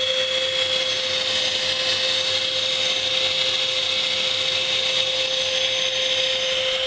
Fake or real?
real